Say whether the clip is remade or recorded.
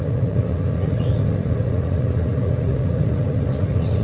remade